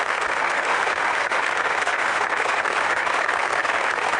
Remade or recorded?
remade